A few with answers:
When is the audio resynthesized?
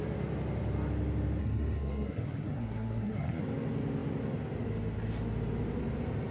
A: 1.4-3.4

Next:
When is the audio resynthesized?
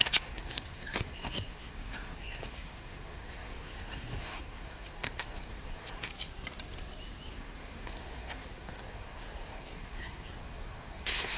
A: 0.0-6.1; 7.3-11.4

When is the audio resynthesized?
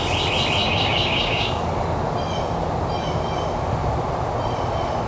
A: 0.6-1.6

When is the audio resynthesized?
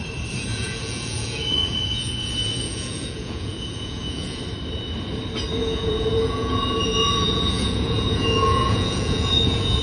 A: 0.5-4.4; 5.6-9.8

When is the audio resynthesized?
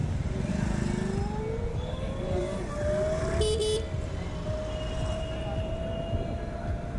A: 1.7-2.7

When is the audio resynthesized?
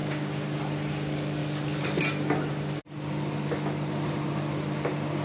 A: 0.0-0.6